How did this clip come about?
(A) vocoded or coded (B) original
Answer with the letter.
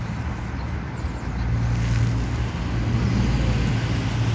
B